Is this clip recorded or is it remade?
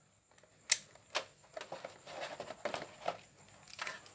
recorded